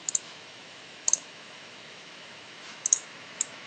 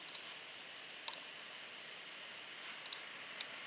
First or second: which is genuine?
second